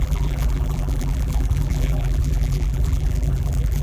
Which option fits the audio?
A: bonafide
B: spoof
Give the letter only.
B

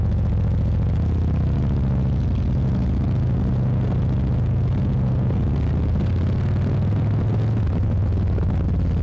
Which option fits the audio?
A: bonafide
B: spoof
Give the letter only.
A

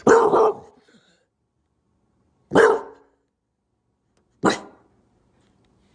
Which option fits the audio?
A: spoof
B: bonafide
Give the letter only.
B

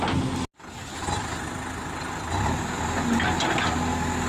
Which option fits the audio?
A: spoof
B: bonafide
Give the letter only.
B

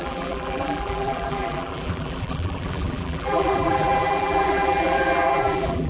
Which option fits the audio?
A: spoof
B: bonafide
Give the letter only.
A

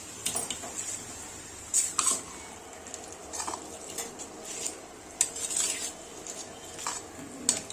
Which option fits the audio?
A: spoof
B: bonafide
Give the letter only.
B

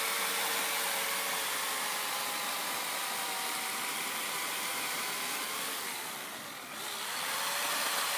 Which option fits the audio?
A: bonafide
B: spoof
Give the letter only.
B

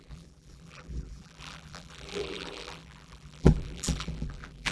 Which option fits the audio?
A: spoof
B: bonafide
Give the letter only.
A